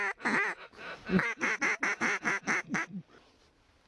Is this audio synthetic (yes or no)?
no